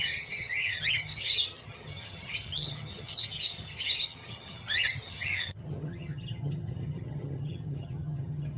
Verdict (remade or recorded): remade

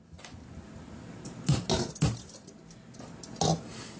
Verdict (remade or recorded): recorded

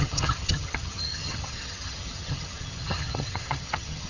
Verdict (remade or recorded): remade